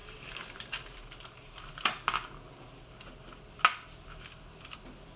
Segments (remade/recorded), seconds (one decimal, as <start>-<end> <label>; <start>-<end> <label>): 0.0-1.7 remade; 1.7-5.2 recorded

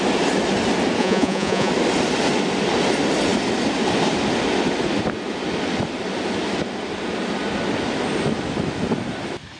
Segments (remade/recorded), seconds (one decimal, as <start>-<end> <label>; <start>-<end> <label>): 0.0-1.0 recorded; 1.0-1.7 remade; 1.7-9.6 recorded

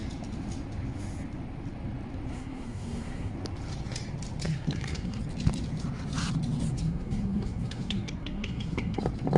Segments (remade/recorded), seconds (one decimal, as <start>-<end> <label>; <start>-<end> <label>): 0.0-2.3 recorded; 2.3-3.3 remade; 3.3-4.5 recorded; 4.5-5.2 remade; 5.2-6.7 recorded; 6.7-9.0 remade; 9.0-9.4 recorded

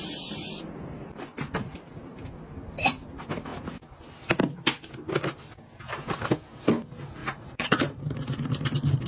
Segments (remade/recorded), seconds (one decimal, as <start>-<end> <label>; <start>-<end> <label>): 0.0-7.2 recorded; 7.2-7.8 remade; 7.8-9.1 recorded